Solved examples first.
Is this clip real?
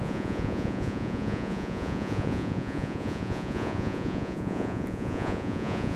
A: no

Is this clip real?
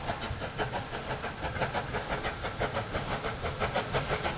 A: yes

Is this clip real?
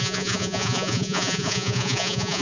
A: no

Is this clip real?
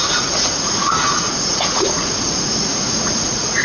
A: no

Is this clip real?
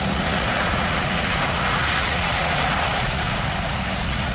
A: no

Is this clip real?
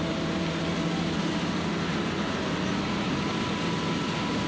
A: yes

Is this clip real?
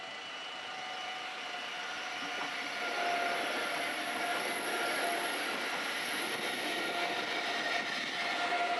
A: yes